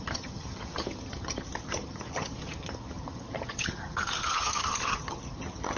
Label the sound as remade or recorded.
remade